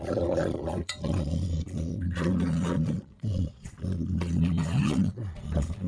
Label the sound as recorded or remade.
remade